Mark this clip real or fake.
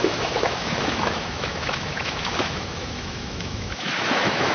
fake